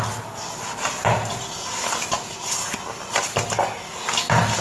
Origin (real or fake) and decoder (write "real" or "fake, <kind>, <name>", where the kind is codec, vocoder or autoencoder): real